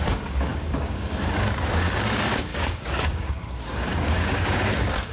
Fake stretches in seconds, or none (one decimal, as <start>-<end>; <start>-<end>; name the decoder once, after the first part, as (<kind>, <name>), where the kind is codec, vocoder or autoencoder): 0.0-5.1 (codec, DAC)